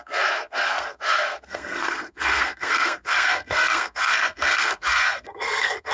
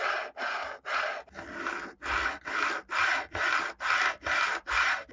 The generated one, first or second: first